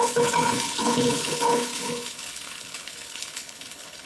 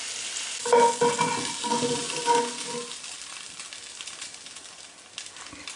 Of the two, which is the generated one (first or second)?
first